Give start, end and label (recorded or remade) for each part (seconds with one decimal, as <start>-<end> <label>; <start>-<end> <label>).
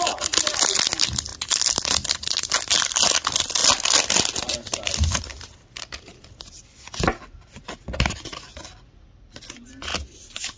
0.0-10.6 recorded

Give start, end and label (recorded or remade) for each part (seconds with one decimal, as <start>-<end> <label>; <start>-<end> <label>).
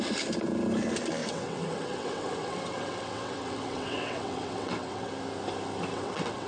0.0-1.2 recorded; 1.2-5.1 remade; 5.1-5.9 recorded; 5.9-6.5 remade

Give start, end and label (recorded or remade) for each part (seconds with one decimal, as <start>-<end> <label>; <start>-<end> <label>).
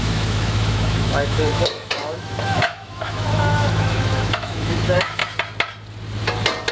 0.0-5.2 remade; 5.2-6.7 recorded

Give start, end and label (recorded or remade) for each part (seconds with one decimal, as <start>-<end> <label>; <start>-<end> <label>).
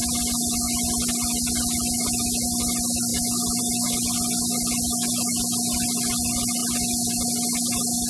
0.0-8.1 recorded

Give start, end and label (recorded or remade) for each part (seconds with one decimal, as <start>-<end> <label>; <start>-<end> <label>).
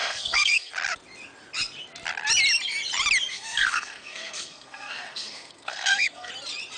0.0-0.7 remade; 0.7-3.3 recorded; 3.3-6.3 remade; 6.3-6.8 recorded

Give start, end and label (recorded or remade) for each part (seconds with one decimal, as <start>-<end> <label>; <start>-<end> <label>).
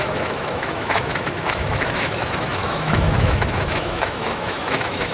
0.0-5.1 remade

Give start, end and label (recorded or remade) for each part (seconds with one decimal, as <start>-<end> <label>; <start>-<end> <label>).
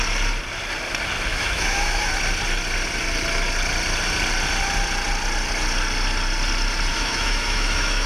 0.0-1.3 recorded; 1.3-2.1 remade; 2.1-6.9 recorded; 6.9-8.1 remade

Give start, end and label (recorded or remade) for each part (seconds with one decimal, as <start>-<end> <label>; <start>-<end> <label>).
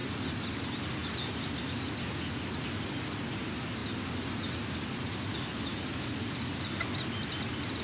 0.0-1.0 recorded; 1.0-1.6 remade; 1.6-7.8 recorded